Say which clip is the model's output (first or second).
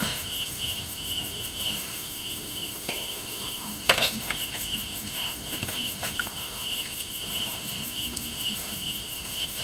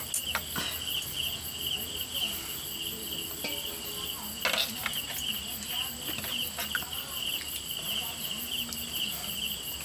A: first